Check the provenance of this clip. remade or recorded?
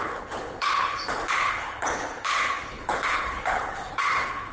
remade